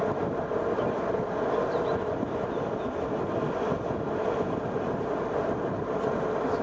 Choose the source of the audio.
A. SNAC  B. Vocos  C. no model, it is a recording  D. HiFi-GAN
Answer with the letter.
C